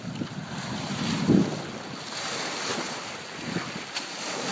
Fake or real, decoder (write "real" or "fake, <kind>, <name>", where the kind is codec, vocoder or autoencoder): real